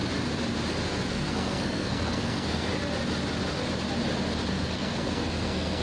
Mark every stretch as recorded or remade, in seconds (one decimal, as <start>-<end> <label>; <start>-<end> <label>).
0.0-1.1 recorded; 1.1-2.7 remade; 2.7-4.5 recorded; 4.5-5.8 remade